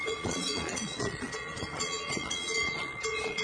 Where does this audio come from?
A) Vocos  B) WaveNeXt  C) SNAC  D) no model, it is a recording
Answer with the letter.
A